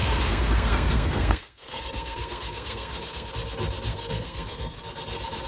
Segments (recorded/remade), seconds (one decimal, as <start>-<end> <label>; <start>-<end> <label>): 0.0-3.3 remade; 3.3-3.9 recorded; 3.9-4.8 remade; 4.8-5.5 recorded